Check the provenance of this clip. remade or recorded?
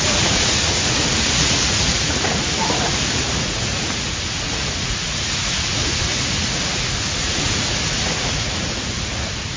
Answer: remade